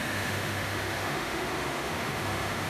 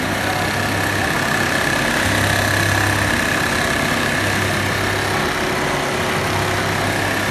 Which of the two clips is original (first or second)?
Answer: second